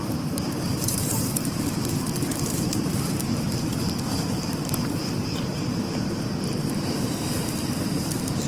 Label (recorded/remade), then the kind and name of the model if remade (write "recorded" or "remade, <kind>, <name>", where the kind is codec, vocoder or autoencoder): remade, vocoder, BigVGAN v2